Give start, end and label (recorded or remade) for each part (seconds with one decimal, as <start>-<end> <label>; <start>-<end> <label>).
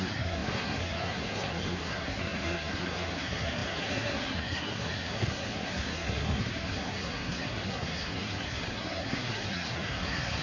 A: 0.0-10.4 remade